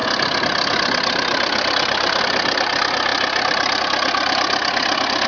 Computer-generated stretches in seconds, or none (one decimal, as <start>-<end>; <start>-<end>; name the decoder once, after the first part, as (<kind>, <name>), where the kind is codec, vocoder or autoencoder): none